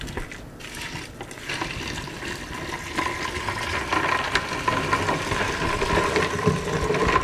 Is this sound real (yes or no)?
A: yes